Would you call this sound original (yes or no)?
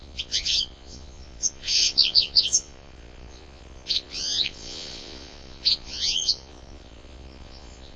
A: no